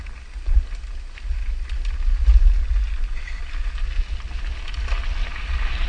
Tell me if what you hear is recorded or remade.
recorded